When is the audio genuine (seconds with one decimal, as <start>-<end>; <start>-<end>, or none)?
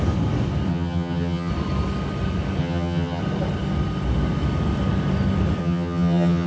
0.0-0.7; 1.5-2.6; 3.2-5.6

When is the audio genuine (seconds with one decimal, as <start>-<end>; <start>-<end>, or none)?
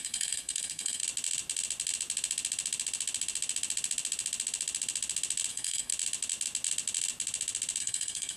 1.0-5.5; 5.9-7.8